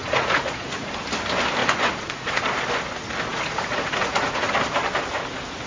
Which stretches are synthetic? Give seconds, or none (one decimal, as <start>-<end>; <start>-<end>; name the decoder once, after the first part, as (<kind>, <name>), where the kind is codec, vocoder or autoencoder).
0.0-0.9 (vocoder, Vocos); 1.6-2.4; 3.3-4.5